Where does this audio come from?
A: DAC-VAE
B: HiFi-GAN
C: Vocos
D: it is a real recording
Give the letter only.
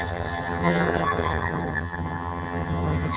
B